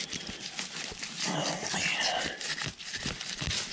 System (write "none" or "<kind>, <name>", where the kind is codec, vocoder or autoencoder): none